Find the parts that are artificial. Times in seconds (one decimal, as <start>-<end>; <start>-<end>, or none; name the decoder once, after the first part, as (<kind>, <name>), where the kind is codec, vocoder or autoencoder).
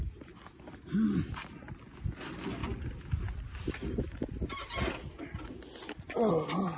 none